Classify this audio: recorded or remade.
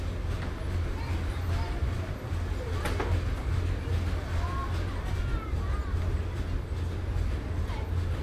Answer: recorded